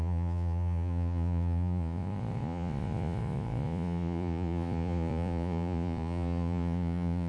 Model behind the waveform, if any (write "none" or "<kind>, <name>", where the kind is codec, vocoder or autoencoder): vocoder, Vocos